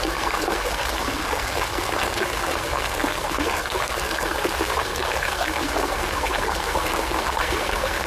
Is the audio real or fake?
fake